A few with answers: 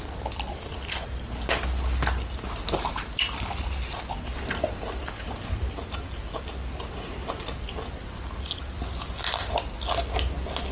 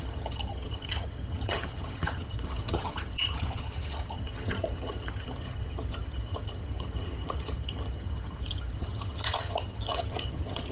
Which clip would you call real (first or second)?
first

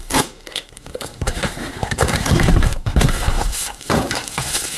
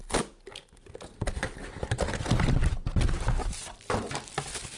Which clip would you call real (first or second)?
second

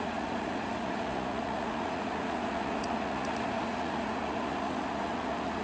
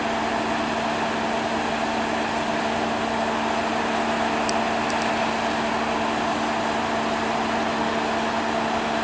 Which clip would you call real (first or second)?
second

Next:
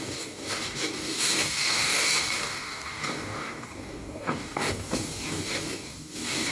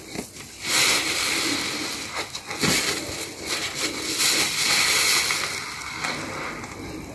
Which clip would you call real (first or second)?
second